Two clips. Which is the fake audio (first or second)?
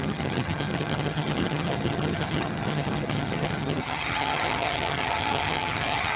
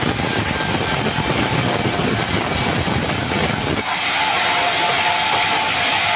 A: first